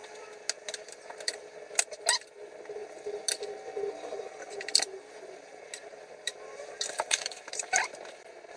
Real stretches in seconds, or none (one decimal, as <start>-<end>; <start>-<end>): 0.0-5.8; 7.8-8.6